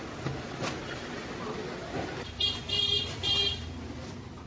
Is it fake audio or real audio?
real